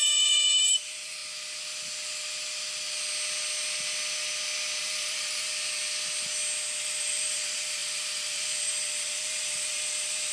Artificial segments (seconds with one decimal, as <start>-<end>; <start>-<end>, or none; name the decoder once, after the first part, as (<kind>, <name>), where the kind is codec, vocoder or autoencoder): 0.0-1.2 (vocoder, BigVGAN v2); 4.8-5.5; 6.8-10.3